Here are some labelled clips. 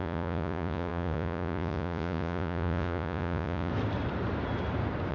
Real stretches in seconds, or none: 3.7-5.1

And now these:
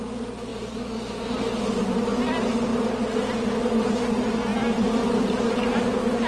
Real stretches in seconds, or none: 0.0-6.3